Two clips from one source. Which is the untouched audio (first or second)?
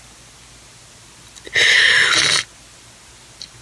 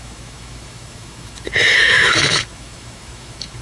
first